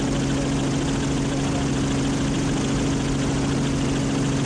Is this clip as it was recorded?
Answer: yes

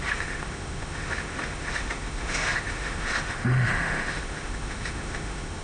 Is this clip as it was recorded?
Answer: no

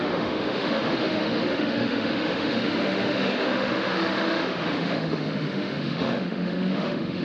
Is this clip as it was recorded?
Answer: no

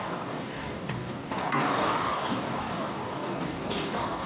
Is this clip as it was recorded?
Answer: no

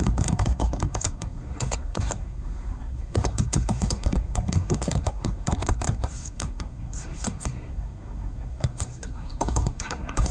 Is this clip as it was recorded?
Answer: no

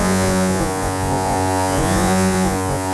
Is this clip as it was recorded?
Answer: no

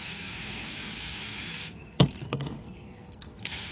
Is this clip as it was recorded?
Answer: no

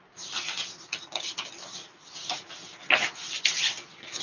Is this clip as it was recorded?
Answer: yes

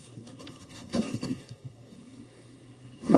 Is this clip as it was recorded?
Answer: no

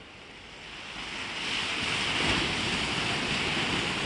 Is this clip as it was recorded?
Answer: yes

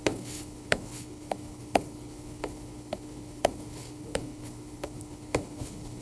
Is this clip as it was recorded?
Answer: no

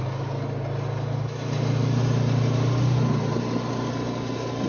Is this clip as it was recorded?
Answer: yes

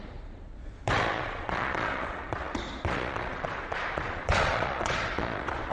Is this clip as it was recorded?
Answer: no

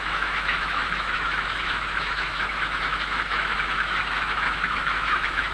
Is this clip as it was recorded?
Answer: no